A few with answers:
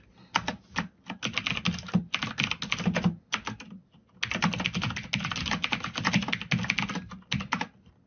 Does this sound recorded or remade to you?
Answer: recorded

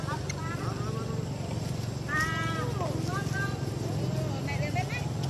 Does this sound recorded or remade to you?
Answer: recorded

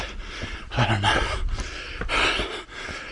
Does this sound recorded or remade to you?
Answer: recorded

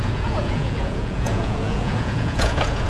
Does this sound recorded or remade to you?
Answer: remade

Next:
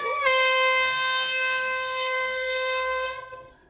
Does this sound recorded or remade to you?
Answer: remade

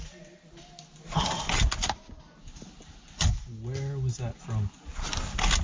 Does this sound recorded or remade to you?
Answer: recorded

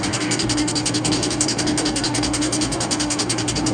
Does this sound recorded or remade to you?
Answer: remade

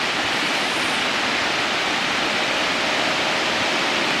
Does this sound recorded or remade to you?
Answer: recorded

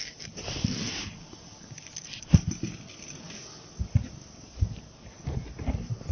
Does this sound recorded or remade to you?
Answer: recorded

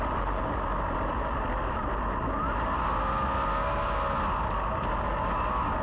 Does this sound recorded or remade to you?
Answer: recorded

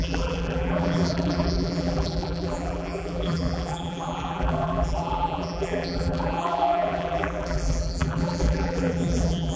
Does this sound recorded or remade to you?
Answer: remade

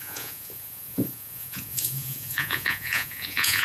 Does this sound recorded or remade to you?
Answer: remade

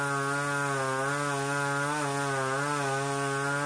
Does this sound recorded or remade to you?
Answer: recorded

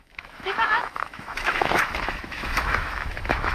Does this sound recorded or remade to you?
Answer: remade